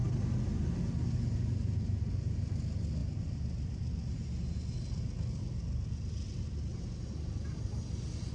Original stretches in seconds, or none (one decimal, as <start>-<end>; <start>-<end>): 0.0-8.3